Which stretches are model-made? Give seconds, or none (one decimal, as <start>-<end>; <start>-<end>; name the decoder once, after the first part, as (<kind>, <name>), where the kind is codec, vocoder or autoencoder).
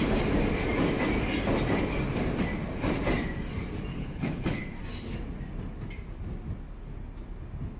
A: 3.9-4.6 (codec, HILCodec)